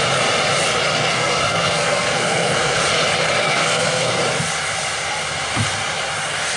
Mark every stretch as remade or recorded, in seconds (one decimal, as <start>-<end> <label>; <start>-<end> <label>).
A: 0.0-1.1 recorded; 1.1-2.8 remade; 2.8-3.4 recorded; 3.4-4.2 remade; 4.2-6.6 recorded